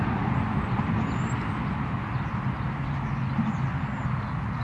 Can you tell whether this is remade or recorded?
recorded